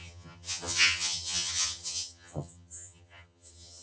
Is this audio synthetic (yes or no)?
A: yes